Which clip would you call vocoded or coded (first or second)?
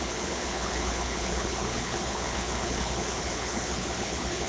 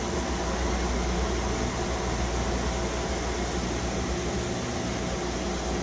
first